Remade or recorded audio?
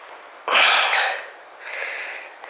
recorded